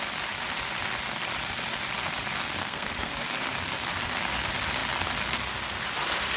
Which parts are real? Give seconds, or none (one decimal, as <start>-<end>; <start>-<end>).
0.0-2.6; 3.1-6.4